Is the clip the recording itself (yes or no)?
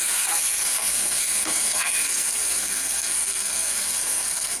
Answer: no